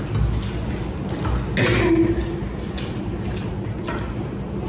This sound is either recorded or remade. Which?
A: recorded